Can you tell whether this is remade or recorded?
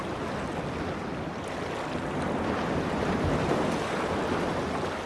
recorded